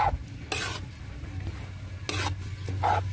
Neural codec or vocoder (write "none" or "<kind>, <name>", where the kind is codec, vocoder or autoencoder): none